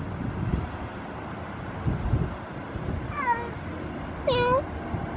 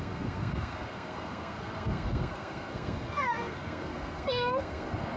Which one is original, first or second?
first